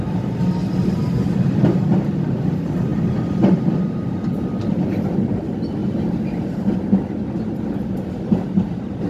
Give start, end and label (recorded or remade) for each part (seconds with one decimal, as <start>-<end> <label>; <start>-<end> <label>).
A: 0.0-9.1 recorded